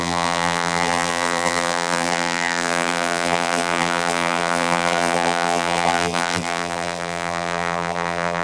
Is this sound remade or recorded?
remade